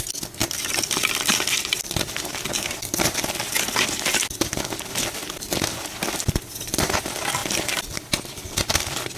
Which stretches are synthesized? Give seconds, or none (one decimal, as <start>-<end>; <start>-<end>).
none